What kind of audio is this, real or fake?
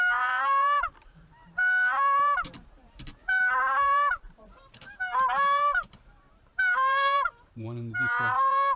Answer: fake